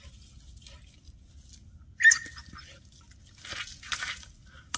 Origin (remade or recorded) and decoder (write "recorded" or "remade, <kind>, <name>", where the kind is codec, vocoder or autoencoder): recorded